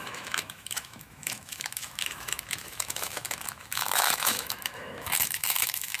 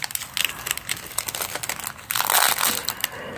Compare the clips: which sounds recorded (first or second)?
second